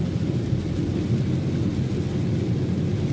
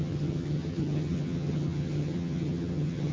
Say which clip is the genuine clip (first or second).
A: first